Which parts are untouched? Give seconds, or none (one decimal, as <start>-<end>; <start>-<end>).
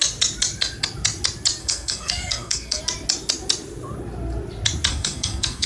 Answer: 0.0-1.6; 2.8-4.9